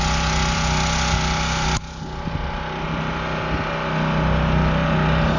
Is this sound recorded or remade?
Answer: recorded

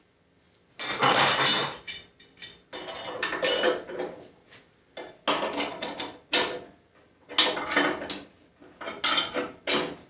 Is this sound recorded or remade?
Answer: recorded